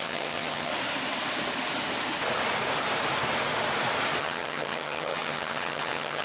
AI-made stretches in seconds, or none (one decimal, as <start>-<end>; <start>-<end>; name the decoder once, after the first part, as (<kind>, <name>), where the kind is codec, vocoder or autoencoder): 0.0-0.7 (vocoder, HiFi-GAN); 4.2-6.2